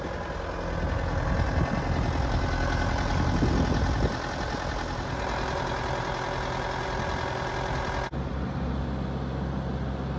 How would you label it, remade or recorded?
recorded